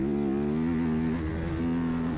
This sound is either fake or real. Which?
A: real